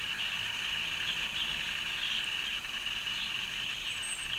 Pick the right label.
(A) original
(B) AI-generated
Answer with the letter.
A